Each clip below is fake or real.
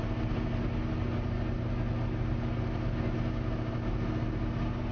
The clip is real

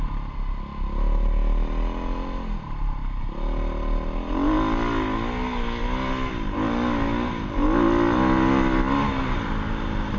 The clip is real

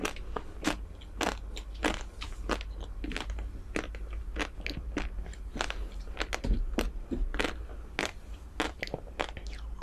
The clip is real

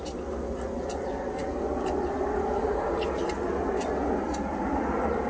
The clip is real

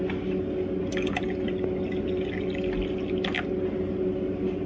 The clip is real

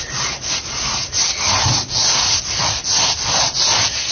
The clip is real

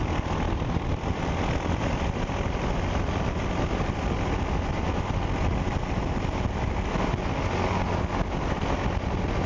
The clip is real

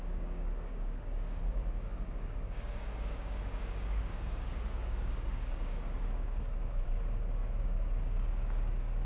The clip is fake